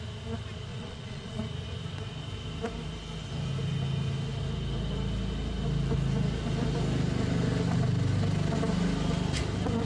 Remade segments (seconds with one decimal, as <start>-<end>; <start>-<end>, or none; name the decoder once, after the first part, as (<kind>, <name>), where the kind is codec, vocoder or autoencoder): 0.7-1.4 (vocoder, Vocos)